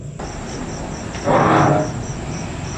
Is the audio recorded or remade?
recorded